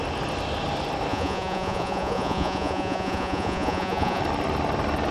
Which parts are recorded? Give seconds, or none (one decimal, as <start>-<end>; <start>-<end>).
0.0-1.1; 4.2-5.1